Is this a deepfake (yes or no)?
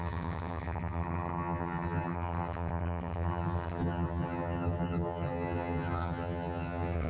yes